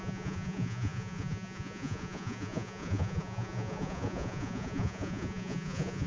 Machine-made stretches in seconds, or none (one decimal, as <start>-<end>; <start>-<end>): 0.0-6.1